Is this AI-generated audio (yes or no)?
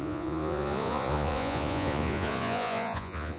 yes